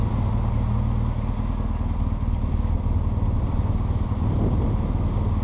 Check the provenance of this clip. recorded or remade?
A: recorded